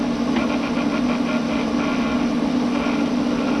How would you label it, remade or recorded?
recorded